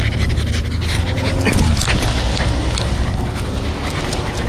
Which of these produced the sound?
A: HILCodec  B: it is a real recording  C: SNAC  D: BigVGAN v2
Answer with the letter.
B